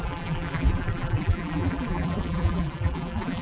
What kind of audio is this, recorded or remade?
remade